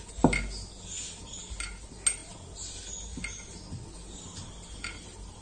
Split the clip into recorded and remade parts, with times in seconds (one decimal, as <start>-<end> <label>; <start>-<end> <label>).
0.0-5.4 recorded